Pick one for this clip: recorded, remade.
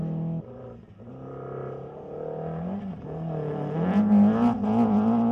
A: recorded